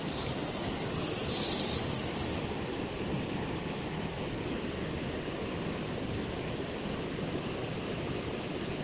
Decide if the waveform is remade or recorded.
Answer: recorded